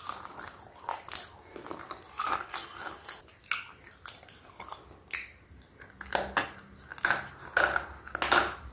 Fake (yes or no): no